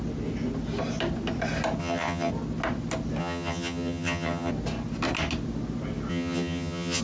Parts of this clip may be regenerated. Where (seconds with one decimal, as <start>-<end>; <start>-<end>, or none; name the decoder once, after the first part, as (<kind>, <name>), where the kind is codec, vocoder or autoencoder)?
1.8-2.3 (vocoder, HiFi-GAN); 3.2-4.5; 6.1-7.0